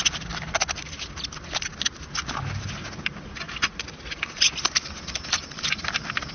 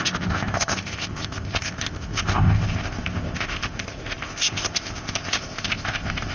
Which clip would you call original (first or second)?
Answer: first